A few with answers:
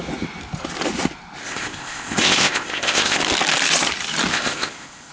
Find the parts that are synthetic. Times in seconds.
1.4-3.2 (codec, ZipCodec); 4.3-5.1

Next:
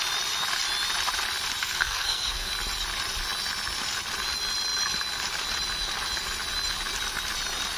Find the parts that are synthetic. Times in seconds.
1.6-2.5 (codec, SNAC)

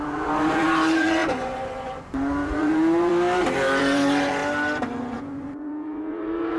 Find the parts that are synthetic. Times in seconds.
0.0-3.1 (vocoder, Vocos); 3.8-4.4; 5.0-6.6

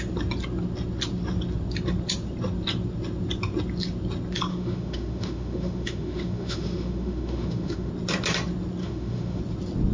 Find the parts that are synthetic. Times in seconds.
4.5-7.9 (autoencoder, DAC-VAE); 8.8-9.4

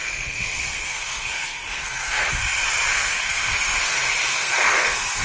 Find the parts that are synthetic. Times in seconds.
0.0-2.3 (codec, SNAC); 2.9-3.9; 4.3-5.2

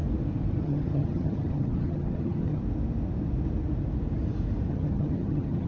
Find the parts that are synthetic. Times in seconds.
0.6-2.6 (vocoder, HiFi-GAN); 4.7-5.7